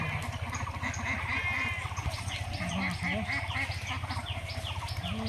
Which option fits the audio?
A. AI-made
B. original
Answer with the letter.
B